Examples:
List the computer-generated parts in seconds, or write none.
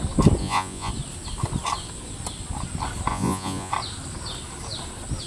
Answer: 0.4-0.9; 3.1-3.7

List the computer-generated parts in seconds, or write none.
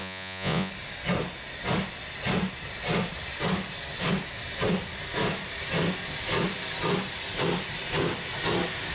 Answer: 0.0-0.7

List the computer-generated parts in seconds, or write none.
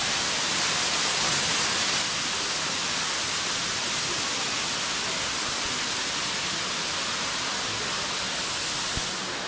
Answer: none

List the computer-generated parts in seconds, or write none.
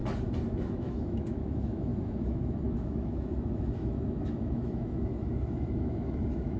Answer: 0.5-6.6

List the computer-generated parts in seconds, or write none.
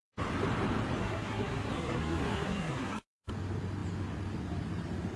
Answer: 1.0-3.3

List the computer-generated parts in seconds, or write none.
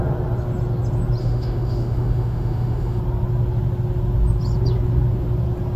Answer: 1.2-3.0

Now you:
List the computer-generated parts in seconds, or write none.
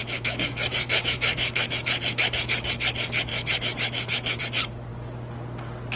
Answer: 0.0-2.5; 3.3-4.4